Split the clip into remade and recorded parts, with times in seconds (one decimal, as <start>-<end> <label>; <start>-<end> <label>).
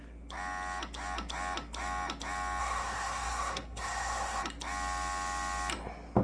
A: 0.0-2.6 recorded; 2.6-4.4 remade; 4.4-6.2 recorded